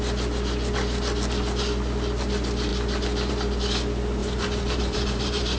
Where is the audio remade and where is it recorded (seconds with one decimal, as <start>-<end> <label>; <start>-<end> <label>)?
0.0-4.2 recorded; 4.2-5.6 remade